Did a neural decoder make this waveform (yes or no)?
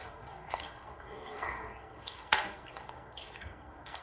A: yes